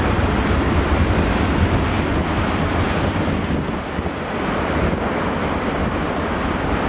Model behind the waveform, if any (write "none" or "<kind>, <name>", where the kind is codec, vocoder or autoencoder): none